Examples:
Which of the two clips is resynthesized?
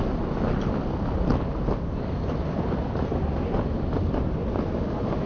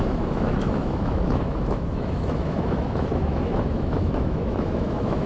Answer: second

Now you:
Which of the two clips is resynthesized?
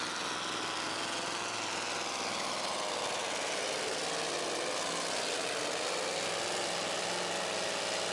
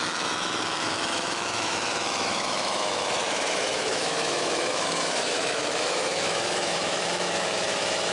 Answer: second